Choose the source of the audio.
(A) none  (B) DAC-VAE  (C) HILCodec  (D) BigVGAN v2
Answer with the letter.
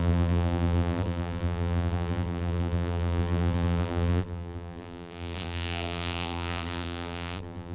D